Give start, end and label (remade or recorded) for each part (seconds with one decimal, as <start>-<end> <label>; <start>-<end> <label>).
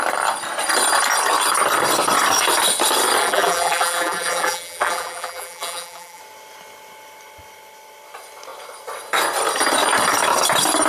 0.0-3.2 recorded; 3.2-6.2 remade; 6.2-10.9 recorded